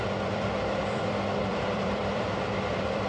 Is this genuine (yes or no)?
no